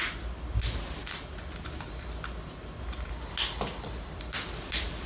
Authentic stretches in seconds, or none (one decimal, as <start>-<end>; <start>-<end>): 0.0-5.1